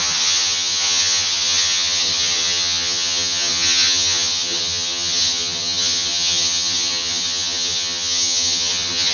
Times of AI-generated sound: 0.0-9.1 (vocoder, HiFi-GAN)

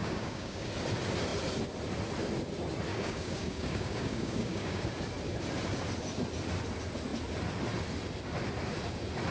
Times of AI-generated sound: 0.0-0.7 (codec, DAC); 2.9-4.9

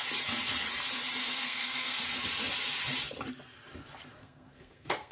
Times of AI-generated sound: 1.2-2.0 (codec, SNAC); 4.2-5.1